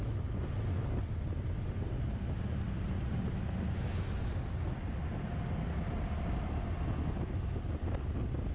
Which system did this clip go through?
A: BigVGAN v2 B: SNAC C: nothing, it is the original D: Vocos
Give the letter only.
C